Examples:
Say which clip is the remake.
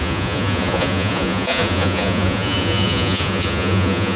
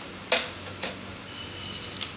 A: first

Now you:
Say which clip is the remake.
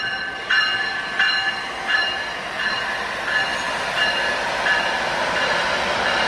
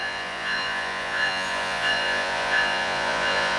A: second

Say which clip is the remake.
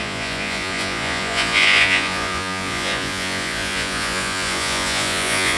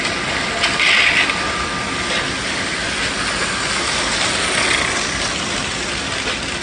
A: first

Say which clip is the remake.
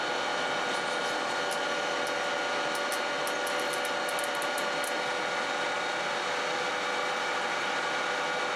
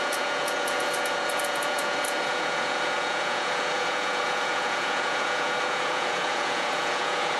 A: second